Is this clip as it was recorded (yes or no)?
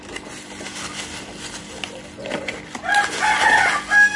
yes